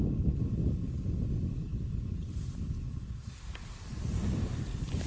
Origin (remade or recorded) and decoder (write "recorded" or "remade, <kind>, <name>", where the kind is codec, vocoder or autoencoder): recorded